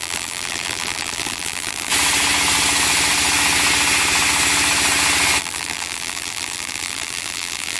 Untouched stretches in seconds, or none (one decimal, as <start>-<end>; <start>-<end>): 1.9-5.4